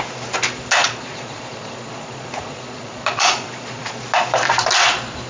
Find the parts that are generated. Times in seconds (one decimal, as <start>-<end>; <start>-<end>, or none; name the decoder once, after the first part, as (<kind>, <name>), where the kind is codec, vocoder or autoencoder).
0.8-4.0 (vocoder, Vocos)